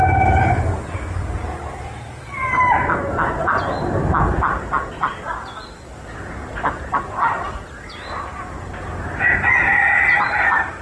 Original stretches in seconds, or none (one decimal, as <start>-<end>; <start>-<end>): 0.0-10.8